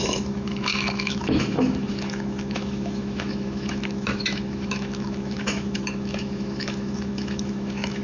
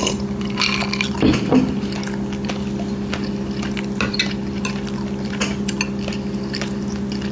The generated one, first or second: first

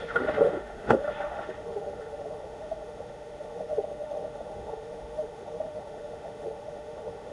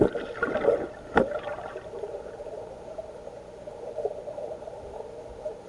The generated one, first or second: first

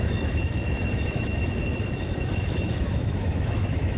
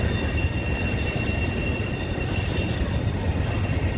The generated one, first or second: first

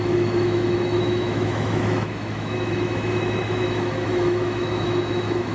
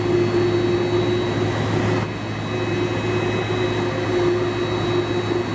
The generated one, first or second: first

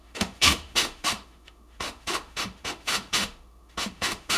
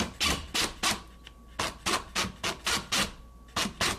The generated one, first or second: first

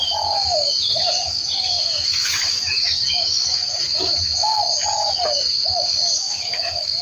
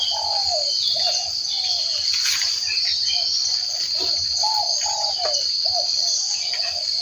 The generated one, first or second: first